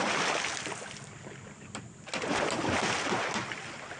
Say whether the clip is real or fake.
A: real